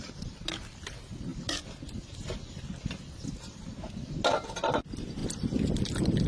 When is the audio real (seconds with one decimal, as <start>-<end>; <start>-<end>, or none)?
0.0-6.3